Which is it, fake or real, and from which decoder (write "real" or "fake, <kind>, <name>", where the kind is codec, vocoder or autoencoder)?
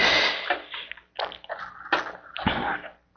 real